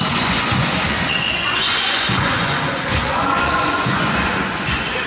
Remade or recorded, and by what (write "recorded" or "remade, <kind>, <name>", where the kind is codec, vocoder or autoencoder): remade, vocoder, Vocos